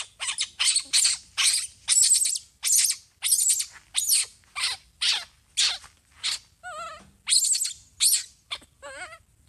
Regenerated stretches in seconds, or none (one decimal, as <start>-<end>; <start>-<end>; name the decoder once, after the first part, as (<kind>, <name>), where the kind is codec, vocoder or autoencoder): none